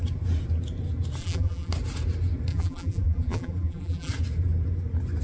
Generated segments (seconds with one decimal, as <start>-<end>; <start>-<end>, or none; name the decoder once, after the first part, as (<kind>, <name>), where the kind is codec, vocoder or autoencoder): 1.2-1.7 (vocoder, BigVGAN v2); 2.5-4.1

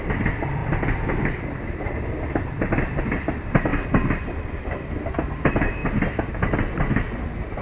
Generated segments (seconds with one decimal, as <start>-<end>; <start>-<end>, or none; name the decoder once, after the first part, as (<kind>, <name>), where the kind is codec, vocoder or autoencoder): 0.0-3.7 (vocoder, BigVGAN v2); 5.0-5.8; 6.4-7.6

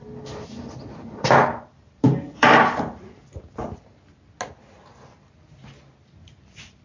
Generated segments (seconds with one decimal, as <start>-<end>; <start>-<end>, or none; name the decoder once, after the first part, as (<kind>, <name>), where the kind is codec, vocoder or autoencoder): 1.5-3.0 (vocoder, BigVGAN v2)